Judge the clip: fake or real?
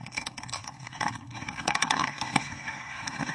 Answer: fake